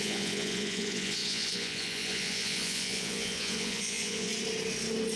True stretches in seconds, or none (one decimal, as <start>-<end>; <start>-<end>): 4.3-5.2